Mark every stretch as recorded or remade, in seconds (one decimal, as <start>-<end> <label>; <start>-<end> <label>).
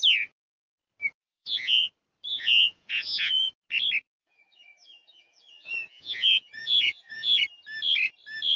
0.0-1.2 recorded; 1.2-1.8 remade; 1.8-2.3 recorded; 2.3-3.5 remade; 3.5-4.2 recorded; 4.2-7.4 remade; 7.4-8.6 recorded